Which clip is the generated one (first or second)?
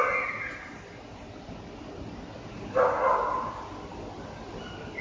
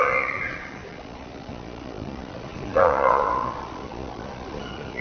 second